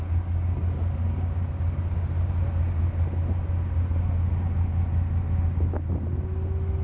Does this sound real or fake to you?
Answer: real